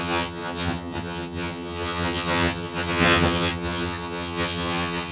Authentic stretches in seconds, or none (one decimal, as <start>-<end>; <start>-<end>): none